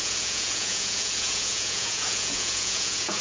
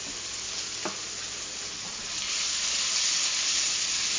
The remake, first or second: first